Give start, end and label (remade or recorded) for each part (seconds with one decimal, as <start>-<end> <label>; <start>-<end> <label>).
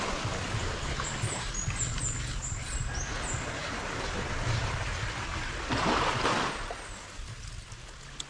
0.0-0.6 recorded; 0.6-1.5 remade; 1.5-3.6 recorded; 3.6-6.2 remade; 6.2-8.3 recorded